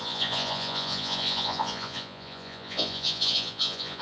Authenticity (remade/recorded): remade